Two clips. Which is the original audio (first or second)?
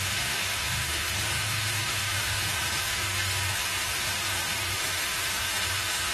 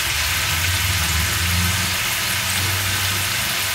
second